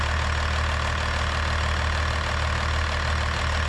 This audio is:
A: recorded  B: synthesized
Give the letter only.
A